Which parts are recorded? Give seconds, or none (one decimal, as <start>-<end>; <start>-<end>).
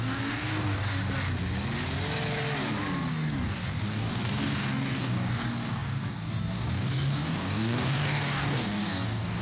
1.0-3.1